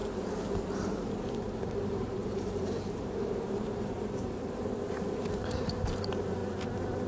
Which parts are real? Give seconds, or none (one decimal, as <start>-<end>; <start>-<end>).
0.0-1.0; 6.4-7.1